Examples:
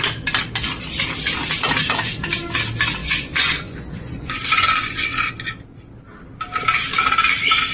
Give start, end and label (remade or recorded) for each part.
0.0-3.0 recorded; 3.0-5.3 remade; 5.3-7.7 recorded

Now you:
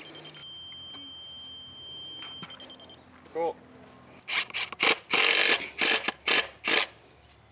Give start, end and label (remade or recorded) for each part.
0.0-7.5 recorded

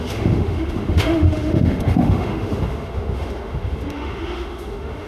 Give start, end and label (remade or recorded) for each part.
0.0-5.1 remade

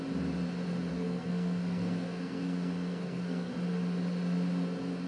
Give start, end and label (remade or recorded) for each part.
0.0-0.9 recorded; 0.9-3.5 remade; 3.5-5.1 recorded

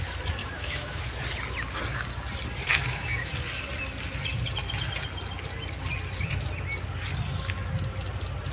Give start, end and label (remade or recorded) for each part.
0.0-0.4 recorded; 0.4-1.0 remade; 1.0-2.7 recorded; 2.7-3.3 remade; 3.3-8.5 recorded

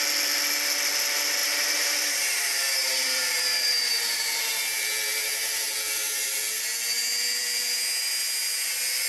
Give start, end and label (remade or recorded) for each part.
0.0-1.4 recorded; 1.4-6.6 remade; 6.6-9.1 recorded